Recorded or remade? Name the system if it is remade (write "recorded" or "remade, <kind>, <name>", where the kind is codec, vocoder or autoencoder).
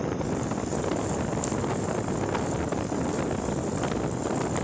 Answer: recorded